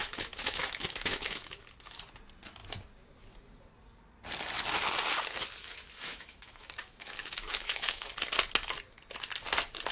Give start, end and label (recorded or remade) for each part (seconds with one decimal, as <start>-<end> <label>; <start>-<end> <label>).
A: 0.0-1.6 remade; 1.6-5.6 recorded; 5.6-8.1 remade; 8.1-9.9 recorded